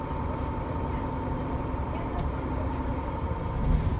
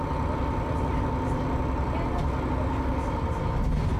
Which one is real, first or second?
second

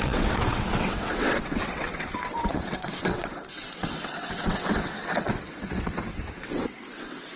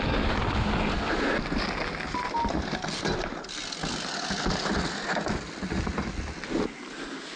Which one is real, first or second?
second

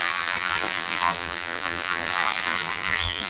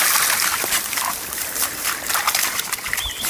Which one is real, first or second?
second